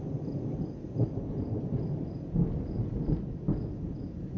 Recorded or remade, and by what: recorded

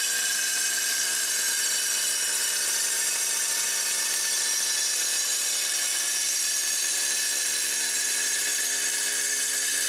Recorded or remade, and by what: remade, vocoder, BigVGAN v2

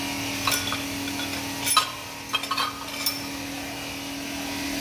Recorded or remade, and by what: recorded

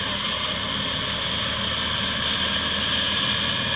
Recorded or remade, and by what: recorded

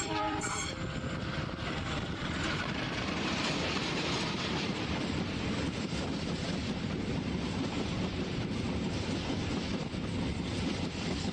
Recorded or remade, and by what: remade, vocoder, BigVGAN v2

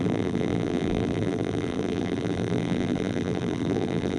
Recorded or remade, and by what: remade, vocoder, BigVGAN v2